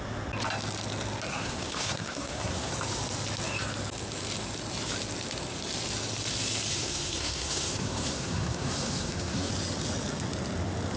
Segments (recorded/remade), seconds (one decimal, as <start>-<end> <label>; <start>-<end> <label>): 0.0-1.3 recorded; 1.3-2.7 remade; 2.7-6.7 recorded; 6.7-9.5 remade; 9.5-11.0 recorded